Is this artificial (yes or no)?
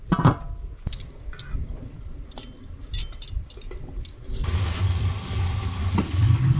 no